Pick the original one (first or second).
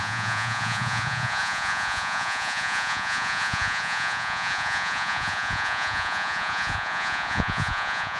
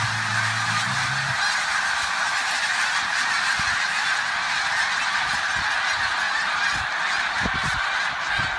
second